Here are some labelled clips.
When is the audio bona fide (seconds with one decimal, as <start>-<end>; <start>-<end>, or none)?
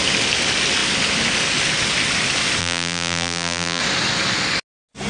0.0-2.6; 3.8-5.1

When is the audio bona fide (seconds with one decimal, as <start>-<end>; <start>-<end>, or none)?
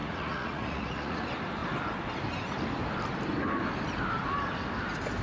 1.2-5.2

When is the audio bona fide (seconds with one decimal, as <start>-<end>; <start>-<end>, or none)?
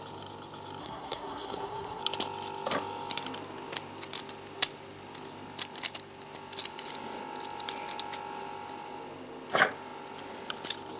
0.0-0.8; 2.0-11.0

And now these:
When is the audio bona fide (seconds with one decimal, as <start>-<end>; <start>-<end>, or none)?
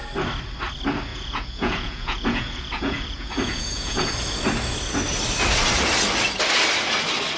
0.0-1.1; 4.1-7.4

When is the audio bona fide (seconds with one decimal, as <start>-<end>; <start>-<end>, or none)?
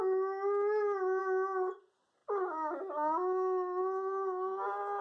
0.0-5.0